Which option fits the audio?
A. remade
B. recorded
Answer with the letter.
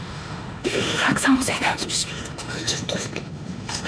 A